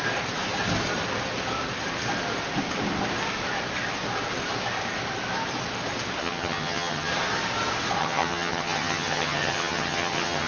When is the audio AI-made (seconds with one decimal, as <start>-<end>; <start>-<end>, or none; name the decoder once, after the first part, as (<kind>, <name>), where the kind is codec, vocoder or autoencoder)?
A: 6.2-7.1 (vocoder, HiFi-GAN); 8.0-10.5